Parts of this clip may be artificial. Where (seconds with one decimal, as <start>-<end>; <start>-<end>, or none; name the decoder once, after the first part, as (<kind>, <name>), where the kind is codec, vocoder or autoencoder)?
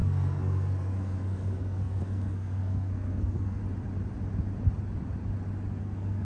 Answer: 0.0-3.6 (codec, SNAC); 5.8-6.2